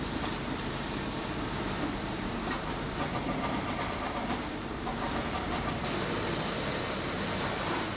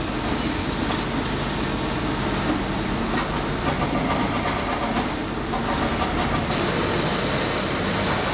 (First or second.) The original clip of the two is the second